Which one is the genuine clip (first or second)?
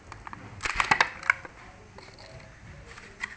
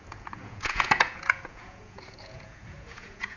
first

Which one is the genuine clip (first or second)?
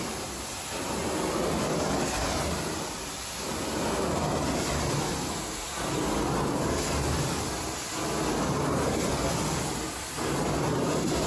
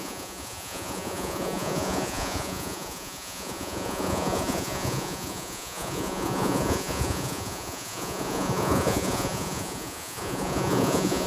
first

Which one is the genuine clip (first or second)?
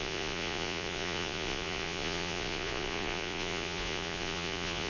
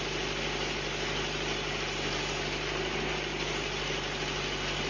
second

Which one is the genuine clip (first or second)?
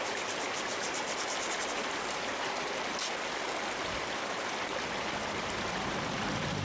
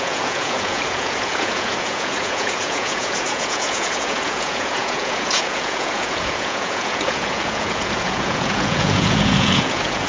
first